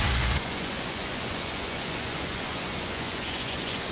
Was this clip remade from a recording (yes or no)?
yes